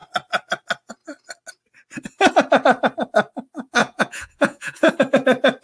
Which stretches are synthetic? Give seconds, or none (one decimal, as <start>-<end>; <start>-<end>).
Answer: 3.8-4.9